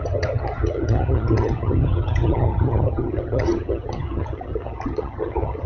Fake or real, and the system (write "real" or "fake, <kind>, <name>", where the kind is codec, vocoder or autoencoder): fake, vocoder, HiFi-GAN